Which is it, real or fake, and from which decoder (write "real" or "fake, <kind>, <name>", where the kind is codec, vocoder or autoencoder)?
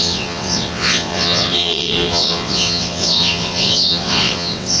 fake, vocoder, WaveNeXt